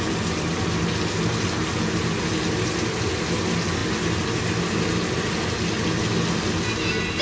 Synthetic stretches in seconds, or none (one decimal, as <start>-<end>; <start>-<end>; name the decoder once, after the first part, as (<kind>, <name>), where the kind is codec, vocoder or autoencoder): none